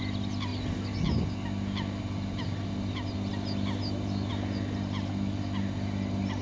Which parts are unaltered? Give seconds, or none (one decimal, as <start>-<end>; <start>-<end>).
0.0-6.4